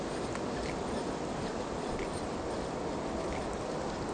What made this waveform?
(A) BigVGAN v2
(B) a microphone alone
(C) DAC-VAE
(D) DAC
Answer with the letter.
B